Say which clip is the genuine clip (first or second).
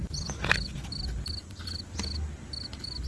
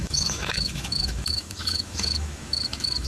first